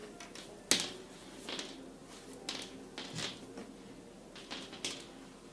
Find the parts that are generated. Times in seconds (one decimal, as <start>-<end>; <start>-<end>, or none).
none